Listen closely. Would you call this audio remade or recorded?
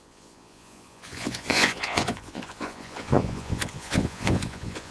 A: remade